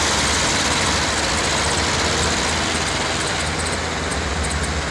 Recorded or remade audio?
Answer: recorded